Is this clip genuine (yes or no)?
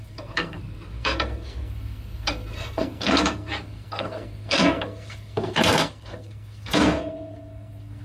no